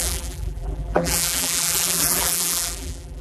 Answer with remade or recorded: remade